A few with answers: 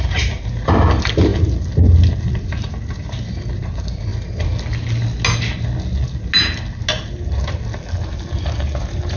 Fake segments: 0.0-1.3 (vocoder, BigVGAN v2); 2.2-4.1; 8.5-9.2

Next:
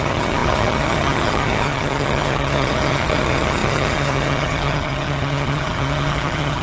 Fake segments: 0.0-6.6 (vocoder, HiFi-GAN)